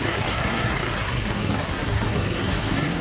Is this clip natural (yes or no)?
no